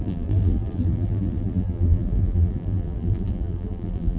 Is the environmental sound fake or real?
fake